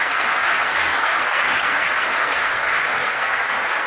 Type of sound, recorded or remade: remade